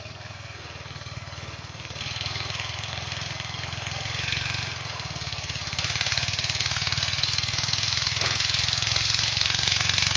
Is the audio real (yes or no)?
no